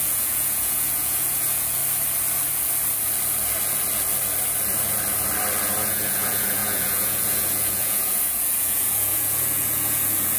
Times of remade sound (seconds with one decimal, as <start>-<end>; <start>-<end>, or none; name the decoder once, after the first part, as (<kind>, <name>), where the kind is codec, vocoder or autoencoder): 0.0-1.8 (vocoder, Vocos); 5.8-10.4